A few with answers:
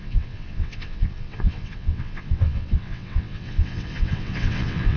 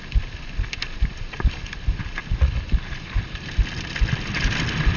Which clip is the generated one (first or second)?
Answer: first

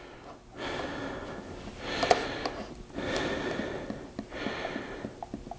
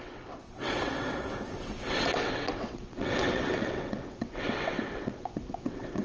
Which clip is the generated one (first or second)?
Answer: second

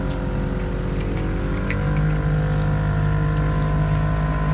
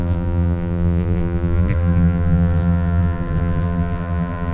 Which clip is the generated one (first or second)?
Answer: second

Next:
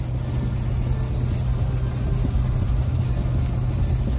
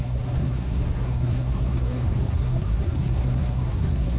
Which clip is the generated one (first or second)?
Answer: second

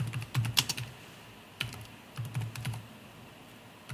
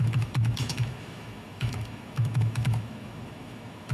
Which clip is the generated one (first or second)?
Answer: second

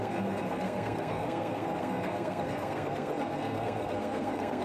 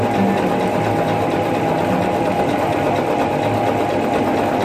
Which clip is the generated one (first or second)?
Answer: first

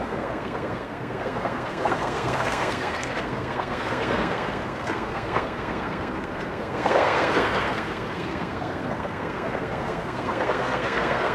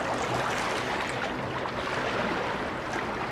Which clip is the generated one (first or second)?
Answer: first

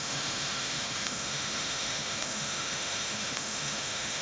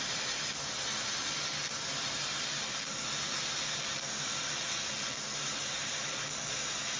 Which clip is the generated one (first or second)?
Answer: first